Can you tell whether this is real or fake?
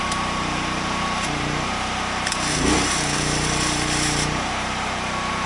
fake